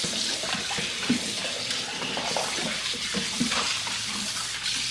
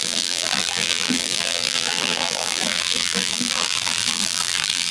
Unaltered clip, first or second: first